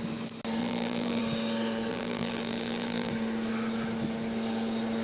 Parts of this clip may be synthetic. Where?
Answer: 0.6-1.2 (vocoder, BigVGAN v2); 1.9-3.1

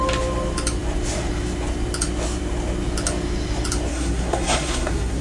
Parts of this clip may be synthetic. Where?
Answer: 3.9-5.2 (codec, SNAC)

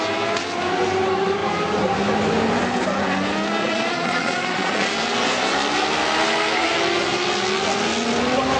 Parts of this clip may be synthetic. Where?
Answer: 3.6-4.9 (vocoder, Vocos)